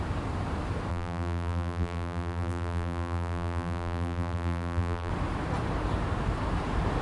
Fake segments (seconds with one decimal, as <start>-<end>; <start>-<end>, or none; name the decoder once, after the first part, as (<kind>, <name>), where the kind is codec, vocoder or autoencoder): 0.9-5.1 (vocoder, BigVGAN v2)